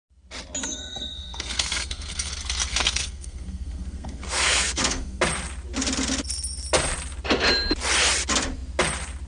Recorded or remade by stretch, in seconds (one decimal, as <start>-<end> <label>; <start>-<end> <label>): 0.0-0.6 recorded; 0.6-2.3 remade; 2.3-2.7 recorded; 2.7-5.2 remade; 5.2-9.3 recorded